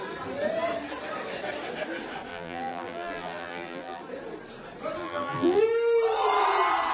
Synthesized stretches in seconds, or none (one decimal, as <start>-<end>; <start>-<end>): 2.3-4.0; 5.0-5.6